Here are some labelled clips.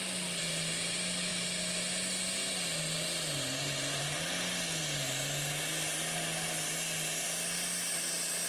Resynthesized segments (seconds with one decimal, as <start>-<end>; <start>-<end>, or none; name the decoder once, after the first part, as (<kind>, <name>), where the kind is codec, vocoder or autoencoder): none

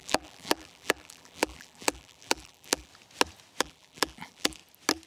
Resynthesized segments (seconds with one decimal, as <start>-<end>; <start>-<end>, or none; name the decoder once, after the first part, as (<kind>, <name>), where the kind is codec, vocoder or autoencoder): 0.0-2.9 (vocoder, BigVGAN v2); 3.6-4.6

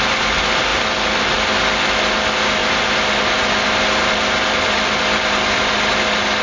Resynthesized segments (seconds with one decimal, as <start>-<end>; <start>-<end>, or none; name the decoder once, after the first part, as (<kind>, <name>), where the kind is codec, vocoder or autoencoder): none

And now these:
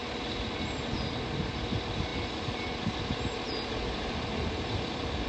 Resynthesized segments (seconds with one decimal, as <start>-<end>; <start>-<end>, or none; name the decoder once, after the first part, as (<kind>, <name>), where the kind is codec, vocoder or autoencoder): none

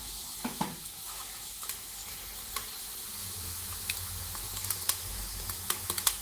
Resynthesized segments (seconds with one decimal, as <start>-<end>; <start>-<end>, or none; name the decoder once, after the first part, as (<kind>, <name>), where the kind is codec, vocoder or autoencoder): 0.0-2.0 (autoencoder, DAC-VAE); 2.8-6.2

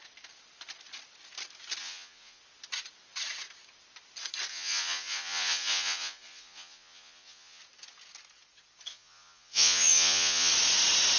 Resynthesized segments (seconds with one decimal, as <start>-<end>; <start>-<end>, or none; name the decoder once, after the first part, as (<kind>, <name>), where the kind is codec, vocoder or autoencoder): 1.8-2.4 (vocoder, Vocos); 4.5-7.6; 8.9-10.5